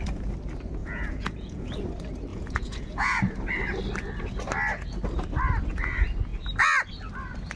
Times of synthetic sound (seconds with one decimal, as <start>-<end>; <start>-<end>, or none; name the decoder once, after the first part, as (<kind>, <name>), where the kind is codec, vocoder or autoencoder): 0.8-1.8 (vocoder, Vocos); 2.3-3.2